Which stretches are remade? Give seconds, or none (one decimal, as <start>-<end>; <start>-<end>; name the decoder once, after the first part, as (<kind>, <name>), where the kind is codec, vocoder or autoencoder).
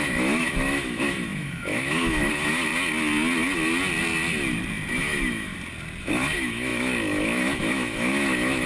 0.0-2.7 (autoencoder, DAC-VAE); 4.9-5.5; 6.0-8.7